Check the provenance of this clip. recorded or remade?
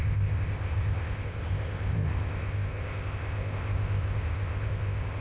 remade